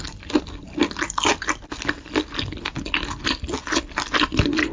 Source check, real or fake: real